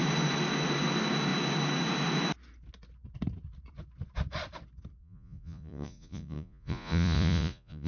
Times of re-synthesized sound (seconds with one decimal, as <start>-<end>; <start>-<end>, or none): 5.0-7.9